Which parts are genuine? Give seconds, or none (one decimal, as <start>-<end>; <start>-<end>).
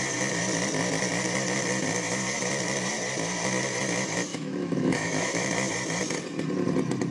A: 0.0-4.3; 5.5-7.1